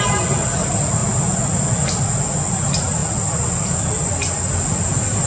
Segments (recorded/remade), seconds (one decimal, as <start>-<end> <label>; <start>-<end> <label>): 0.0-5.3 recorded